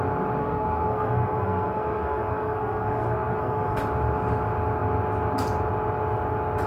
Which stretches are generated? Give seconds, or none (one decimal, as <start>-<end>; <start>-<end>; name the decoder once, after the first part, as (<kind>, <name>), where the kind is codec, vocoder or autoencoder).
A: 0.4-3.8 (codec, SNAC)